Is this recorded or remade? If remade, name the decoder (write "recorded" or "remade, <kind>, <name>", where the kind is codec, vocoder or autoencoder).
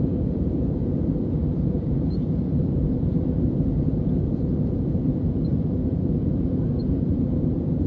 remade, vocoder, Vocos